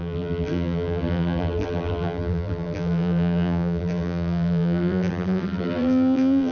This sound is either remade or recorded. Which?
remade